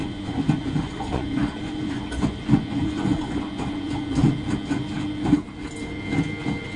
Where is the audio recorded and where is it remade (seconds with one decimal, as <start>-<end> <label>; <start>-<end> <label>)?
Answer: 0.0-4.1 remade; 4.1-6.8 recorded